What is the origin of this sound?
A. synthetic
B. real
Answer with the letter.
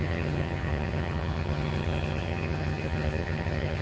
A